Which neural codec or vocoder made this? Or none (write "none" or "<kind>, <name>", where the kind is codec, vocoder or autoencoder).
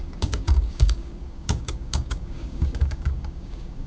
codec, DAC